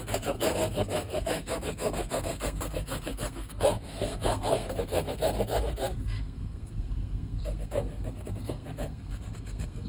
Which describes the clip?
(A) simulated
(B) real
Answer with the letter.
A